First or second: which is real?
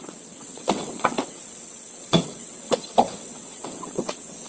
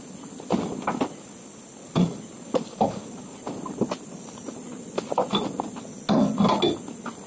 second